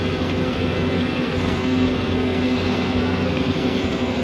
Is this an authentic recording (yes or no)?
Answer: no